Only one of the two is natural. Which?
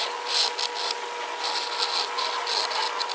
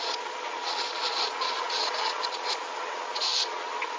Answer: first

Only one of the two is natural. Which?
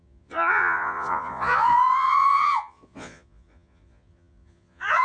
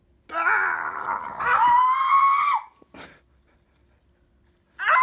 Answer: second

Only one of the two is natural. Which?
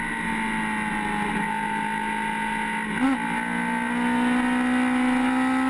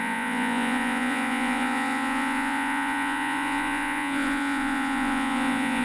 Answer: first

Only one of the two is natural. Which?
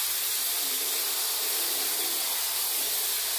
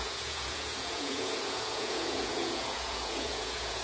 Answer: first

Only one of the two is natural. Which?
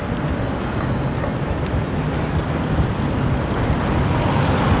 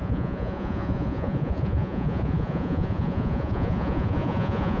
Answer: first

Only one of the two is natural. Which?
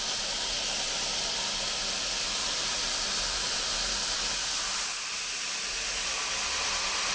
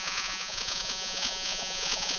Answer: first